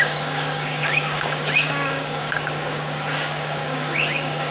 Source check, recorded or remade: remade